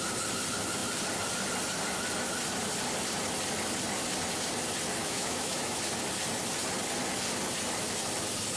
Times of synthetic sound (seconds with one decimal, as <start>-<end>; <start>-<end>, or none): 5.0-5.8